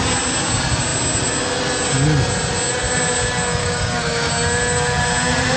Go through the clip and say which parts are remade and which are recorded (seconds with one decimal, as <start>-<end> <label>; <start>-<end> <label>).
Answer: 0.0-3.6 recorded; 3.6-4.3 remade; 4.3-5.6 recorded